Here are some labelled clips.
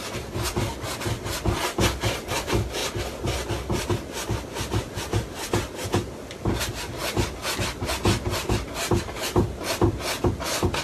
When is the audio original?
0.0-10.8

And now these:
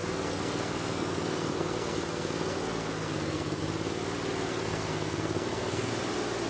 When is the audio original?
3.6-4.5; 5.9-6.5

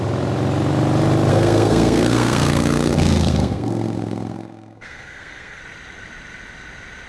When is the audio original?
0.0-1.3; 5.6-7.1

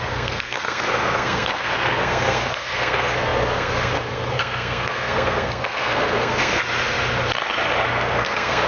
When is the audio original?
6.6-7.9

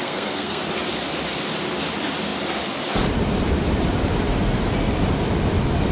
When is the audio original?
0.6-5.9